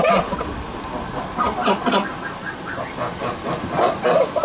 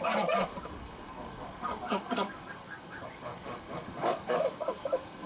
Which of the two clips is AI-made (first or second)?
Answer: second